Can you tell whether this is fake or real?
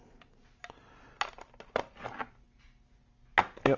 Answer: real